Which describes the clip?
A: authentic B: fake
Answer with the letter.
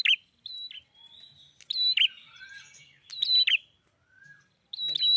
A